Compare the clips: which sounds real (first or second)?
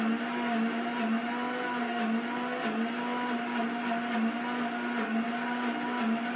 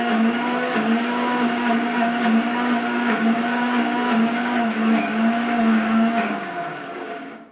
first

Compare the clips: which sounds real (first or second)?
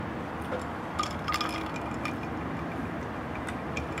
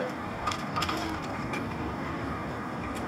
first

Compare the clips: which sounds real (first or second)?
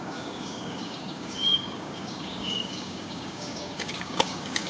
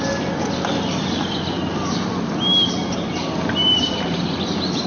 second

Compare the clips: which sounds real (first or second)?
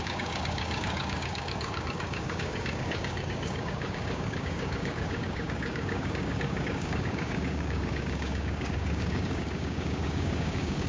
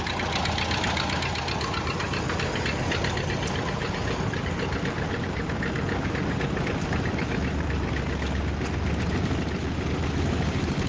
second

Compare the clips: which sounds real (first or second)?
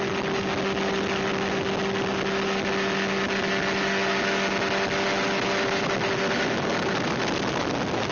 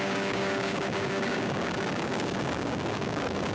first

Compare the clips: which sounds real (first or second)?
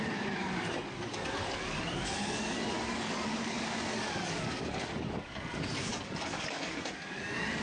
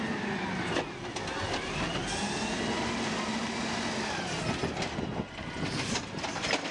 second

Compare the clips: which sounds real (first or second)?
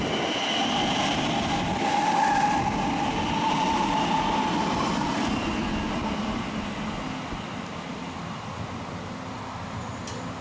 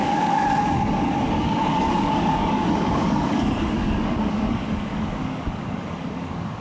first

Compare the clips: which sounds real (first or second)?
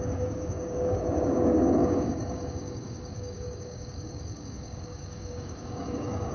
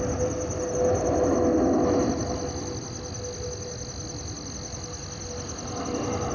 second